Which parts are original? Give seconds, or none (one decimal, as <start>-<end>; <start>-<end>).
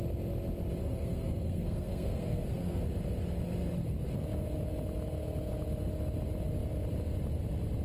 0.0-0.8; 2.8-7.8